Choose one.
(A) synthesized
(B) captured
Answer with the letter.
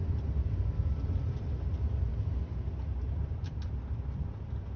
B